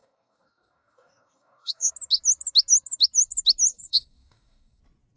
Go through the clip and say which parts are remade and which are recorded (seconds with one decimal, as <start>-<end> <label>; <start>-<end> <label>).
0.0-1.9 remade; 1.9-3.7 recorded; 3.7-4.8 remade; 4.8-5.2 recorded